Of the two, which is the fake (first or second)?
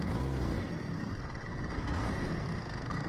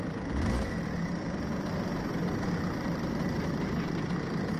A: first